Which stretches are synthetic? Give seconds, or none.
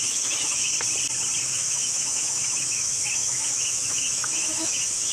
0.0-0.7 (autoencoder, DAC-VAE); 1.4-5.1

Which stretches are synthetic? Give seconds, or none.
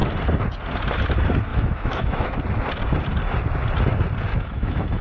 1.5-2.4 (autoencoder, DAC-VAE); 4.3-5.0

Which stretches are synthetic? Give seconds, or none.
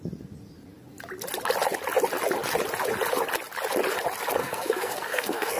4.4-5.6 (codec, SNAC)